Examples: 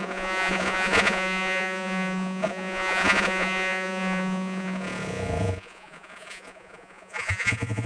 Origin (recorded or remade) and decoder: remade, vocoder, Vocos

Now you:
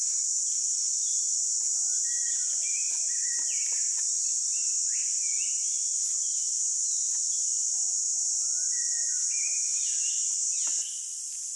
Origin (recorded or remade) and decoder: recorded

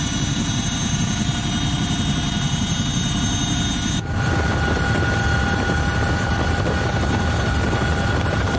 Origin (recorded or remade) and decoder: remade, vocoder, BigVGAN v2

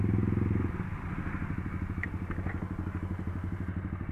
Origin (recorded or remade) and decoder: recorded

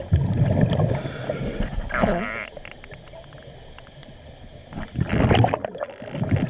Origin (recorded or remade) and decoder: recorded